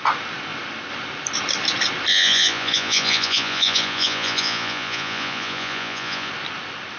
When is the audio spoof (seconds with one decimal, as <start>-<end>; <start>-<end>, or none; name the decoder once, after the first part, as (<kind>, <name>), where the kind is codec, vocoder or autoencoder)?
2.1-6.3 (vocoder, Vocos)